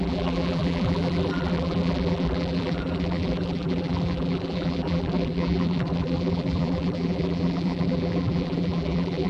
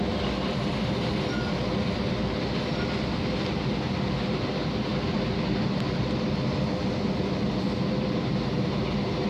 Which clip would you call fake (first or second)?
first